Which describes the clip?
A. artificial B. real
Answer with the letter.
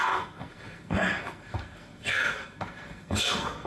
A